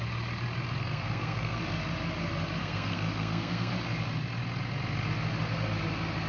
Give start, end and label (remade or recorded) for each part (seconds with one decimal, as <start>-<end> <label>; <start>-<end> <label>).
0.0-0.8 recorded; 0.8-1.6 remade; 1.6-2.6 recorded; 2.6-3.7 remade; 3.7-6.3 recorded